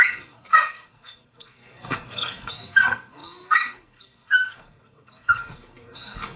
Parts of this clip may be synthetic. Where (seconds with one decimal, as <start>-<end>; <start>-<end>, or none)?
0.0-6.4